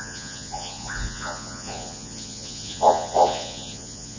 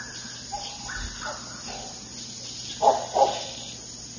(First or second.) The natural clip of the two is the second